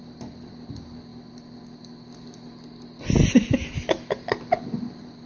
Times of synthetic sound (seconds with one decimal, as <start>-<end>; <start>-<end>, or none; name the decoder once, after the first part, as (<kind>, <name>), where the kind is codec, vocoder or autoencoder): none